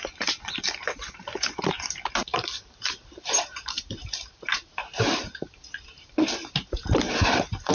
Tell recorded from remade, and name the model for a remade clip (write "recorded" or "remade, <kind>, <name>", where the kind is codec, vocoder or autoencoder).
remade, vocoder, BigVGAN v2